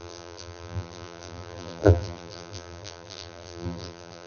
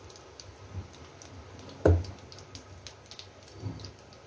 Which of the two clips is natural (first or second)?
second